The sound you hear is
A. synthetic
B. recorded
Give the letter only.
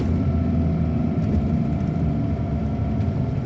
B